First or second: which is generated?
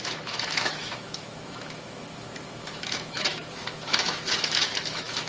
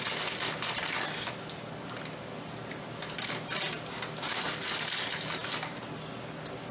first